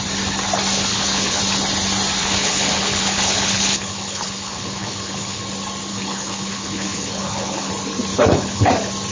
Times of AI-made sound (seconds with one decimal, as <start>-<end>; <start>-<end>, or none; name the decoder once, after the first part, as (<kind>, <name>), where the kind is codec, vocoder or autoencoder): 0.9-1.4 (codec, HILCodec); 2.2-5.4; 5.9-7.7; 8.1-8.7